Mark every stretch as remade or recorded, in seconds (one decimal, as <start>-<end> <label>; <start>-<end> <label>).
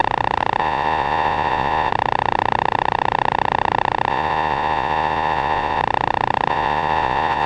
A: 0.0-0.6 recorded; 0.6-1.9 remade; 1.9-4.1 recorded; 4.1-5.8 remade; 5.8-6.5 recorded; 6.5-7.5 remade